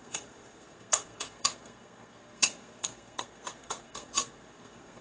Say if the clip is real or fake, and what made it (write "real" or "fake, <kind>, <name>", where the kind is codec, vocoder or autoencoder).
fake, codec, SNAC